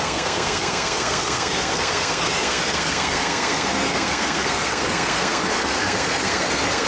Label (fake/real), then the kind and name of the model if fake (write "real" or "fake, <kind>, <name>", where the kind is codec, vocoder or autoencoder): fake, codec, SNAC